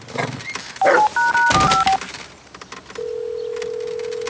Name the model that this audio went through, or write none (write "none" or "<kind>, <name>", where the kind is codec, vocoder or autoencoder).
none